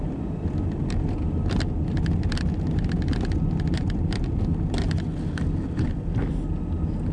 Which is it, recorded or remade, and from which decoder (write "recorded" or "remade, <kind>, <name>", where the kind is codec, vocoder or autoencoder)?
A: recorded